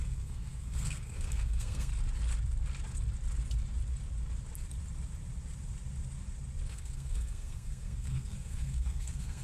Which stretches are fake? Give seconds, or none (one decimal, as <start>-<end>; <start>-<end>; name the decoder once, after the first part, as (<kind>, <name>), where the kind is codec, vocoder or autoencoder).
0.0-1.9 (codec, SNAC); 6.7-9.4